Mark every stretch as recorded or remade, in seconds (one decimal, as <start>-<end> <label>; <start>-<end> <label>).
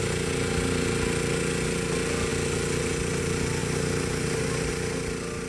0.0-3.6 recorded; 3.6-4.7 remade; 4.7-5.5 recorded